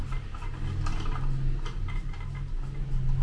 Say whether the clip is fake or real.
real